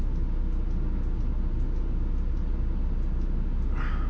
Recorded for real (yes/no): yes